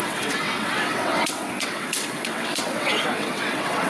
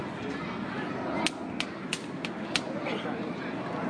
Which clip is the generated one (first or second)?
first